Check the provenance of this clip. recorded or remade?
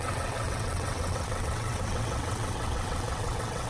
remade